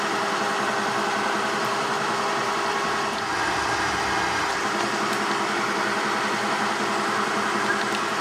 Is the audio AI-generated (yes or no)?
no